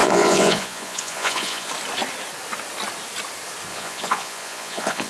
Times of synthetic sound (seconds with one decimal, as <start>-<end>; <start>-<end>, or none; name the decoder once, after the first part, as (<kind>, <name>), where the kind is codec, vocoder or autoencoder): 0.0-1.7 (vocoder, Vocos); 3.7-5.1